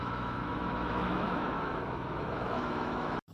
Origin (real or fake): fake